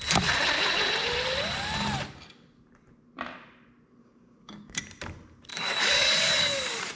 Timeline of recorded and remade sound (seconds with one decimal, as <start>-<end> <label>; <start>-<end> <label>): 0.0-4.0 recorded; 4.0-4.8 remade; 4.8-5.5 recorded; 5.5-7.0 remade

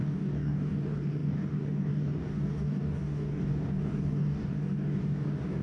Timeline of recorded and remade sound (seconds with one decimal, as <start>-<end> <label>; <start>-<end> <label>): 0.0-5.6 remade

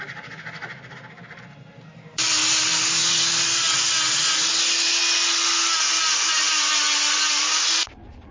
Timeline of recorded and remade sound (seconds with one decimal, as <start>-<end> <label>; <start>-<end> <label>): 0.0-8.3 recorded

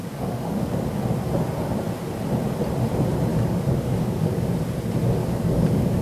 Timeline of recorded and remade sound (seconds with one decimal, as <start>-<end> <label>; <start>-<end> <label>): 0.0-0.7 remade; 0.7-3.3 recorded; 3.3-4.5 remade; 4.5-5.2 recorded; 5.2-6.0 remade

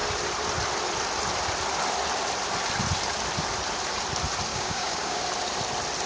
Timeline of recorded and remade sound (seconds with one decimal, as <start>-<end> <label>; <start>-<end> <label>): 0.0-4.5 recorded; 4.5-5.2 remade; 5.2-6.1 recorded